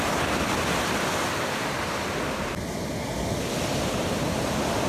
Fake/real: real